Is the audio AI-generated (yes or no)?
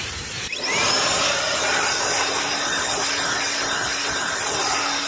yes